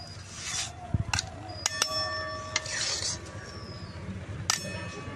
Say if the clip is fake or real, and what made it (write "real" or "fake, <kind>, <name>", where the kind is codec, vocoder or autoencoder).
real